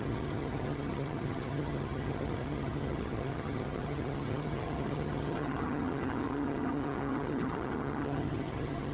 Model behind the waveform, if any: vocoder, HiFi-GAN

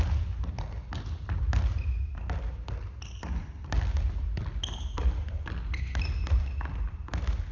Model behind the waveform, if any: none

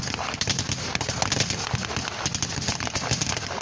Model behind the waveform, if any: none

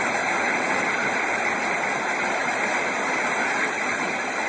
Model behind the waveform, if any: none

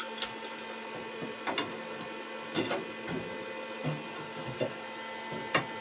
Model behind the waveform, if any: none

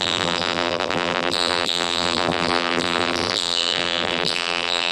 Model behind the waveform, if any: vocoder, BigVGAN v2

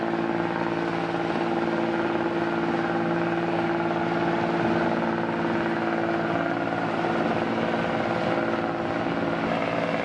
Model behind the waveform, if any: none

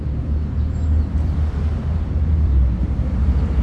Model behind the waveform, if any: vocoder, BigVGAN v2